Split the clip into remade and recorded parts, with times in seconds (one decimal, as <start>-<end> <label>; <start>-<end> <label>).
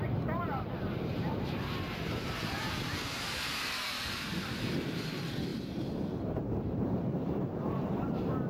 0.0-8.5 remade